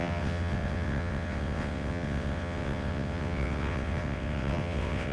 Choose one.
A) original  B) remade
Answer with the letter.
B